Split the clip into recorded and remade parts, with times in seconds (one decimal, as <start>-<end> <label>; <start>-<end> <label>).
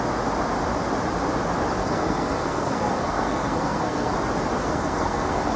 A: 0.0-1.8 recorded; 1.8-4.1 remade; 4.1-4.6 recorded; 4.6-5.6 remade